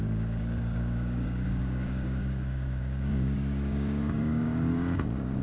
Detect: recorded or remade remade